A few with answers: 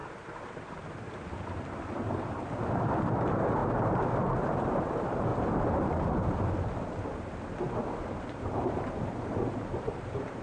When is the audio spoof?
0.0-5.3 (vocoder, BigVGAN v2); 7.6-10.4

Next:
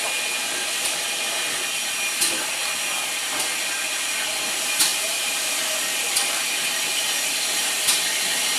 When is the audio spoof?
none

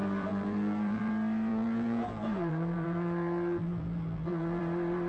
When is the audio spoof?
0.0-1.1 (vocoder, BigVGAN v2); 1.5-4.6

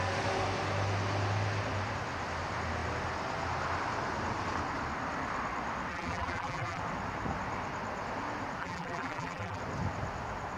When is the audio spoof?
5.9-6.8 (vocoder, BigVGAN v2); 8.6-9.6